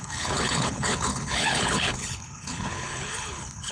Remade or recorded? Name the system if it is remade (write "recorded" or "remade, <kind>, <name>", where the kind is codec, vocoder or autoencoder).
remade, codec, HILCodec